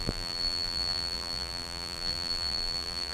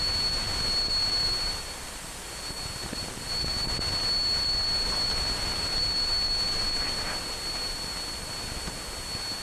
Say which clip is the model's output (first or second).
first